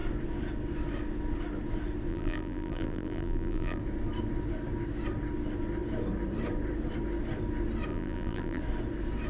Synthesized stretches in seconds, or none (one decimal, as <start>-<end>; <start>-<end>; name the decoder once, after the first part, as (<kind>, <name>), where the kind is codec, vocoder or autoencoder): 2.1-3.8 (vocoder, BigVGAN v2); 7.9-8.6